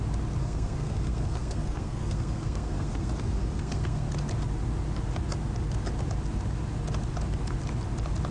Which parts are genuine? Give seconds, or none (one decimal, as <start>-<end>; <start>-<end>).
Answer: 0.0-0.4; 4.1-8.3